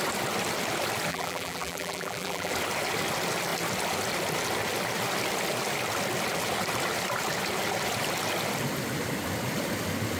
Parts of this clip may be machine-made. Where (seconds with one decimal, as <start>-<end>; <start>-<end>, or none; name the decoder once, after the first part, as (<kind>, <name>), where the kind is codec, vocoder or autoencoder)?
1.1-2.5 (vocoder, BigVGAN v2)